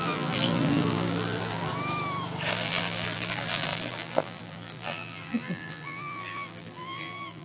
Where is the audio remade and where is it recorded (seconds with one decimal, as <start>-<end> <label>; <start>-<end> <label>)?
0.0-1.7 remade; 1.7-2.5 recorded; 2.5-7.4 remade